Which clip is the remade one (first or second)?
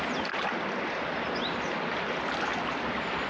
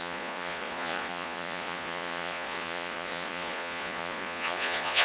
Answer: second